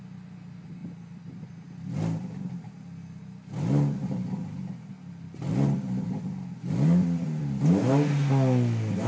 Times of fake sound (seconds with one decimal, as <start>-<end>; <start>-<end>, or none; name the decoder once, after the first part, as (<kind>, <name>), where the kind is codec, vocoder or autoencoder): none